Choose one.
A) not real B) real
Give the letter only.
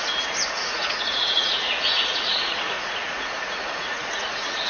A